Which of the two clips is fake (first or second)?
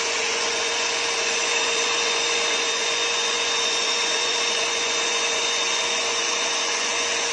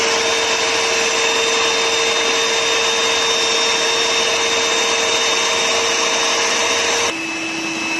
first